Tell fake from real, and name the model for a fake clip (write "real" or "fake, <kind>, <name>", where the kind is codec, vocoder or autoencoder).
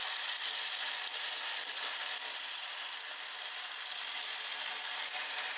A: real